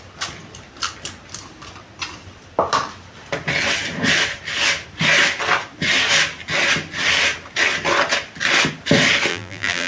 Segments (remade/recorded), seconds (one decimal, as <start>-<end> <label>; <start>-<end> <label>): 0.0-9.3 recorded; 9.3-9.9 remade

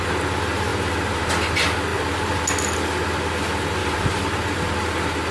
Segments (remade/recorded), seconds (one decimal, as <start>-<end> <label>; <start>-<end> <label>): 0.0-0.7 recorded; 0.7-1.3 remade; 1.3-1.9 recorded; 1.9-2.4 remade; 2.4-3.8 recorded; 3.8-4.6 remade; 4.6-5.3 recorded